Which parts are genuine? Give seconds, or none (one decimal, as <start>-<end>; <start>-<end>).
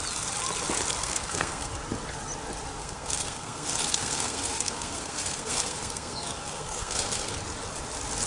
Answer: 0.0-1.0; 1.7-2.8; 7.3-8.3